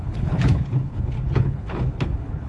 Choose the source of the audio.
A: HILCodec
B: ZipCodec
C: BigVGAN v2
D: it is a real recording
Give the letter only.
A